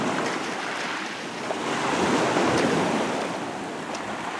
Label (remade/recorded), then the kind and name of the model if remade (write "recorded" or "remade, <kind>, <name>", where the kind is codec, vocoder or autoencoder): remade, vocoder, BigVGAN v2